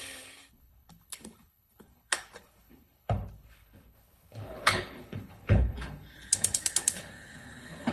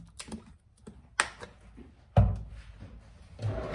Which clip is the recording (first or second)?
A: second